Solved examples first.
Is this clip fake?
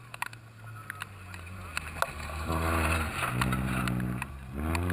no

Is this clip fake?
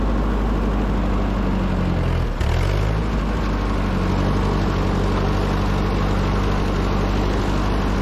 no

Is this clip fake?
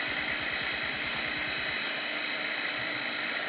no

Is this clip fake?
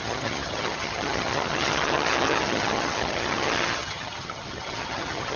yes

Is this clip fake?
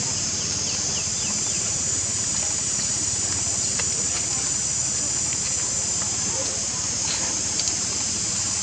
yes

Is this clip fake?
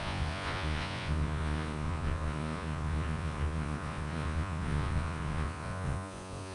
yes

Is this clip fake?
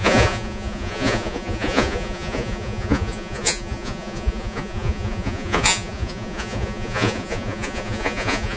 yes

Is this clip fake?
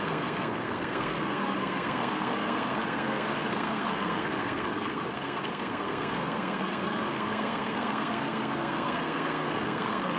yes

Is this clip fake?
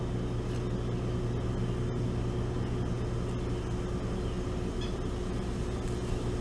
no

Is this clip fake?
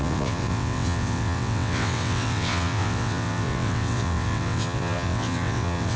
yes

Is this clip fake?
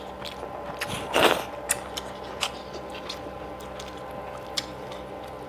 no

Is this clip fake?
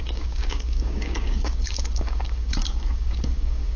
yes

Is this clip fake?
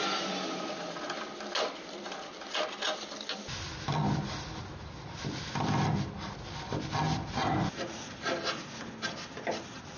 no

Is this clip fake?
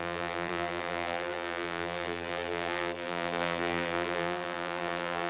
yes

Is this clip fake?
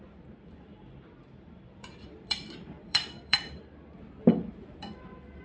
yes